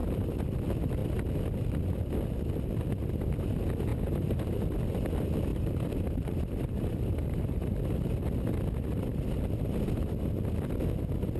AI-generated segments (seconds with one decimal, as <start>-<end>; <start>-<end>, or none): 0.0-0.5; 3.9-4.5; 5.5-8.0